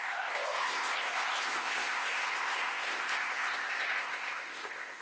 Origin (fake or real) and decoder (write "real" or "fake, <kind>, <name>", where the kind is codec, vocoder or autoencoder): fake, codec, ZipCodec